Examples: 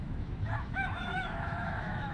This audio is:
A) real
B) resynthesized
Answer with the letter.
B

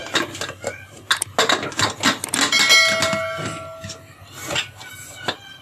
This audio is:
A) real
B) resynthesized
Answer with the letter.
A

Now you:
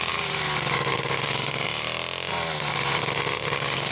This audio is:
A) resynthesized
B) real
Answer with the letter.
B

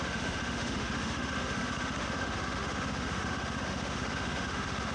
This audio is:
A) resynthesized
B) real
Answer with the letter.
A